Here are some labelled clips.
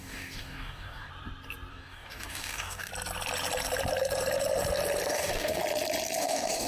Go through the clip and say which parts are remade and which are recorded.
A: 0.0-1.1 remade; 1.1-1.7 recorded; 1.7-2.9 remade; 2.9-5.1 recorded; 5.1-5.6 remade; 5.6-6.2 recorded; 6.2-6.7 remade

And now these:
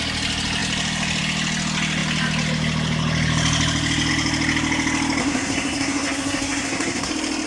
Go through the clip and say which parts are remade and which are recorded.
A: 0.0-5.2 recorded; 5.2-7.1 remade; 7.1-7.5 recorded

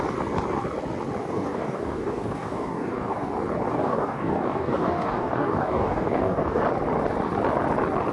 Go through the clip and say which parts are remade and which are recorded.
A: 0.0-1.2 recorded; 1.2-3.3 remade; 3.3-3.7 recorded; 3.7-6.6 remade; 6.6-8.1 recorded

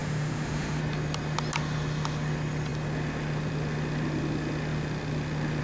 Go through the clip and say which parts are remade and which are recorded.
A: 0.0-0.8 remade; 0.8-5.6 recorded

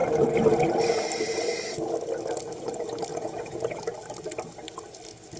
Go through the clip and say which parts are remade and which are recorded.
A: 0.0-3.1 recorded; 3.1-3.8 remade; 3.8-5.4 recorded